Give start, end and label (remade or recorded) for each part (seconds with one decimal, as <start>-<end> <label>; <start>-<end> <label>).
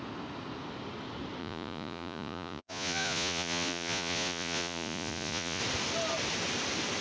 0.0-1.4 recorded; 1.4-5.6 remade; 5.6-7.0 recorded